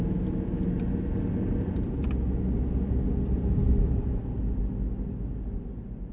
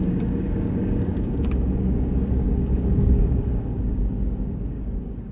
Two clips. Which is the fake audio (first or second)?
second